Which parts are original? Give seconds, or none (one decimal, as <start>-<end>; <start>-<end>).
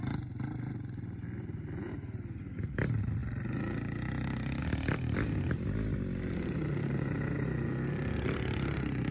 0.0-9.1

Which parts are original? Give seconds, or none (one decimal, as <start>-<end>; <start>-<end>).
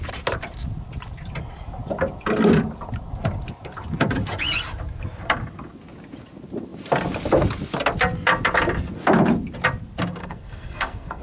0.0-10.2